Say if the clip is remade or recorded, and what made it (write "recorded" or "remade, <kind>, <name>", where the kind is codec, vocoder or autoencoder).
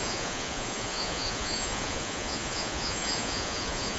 remade, vocoder, Vocos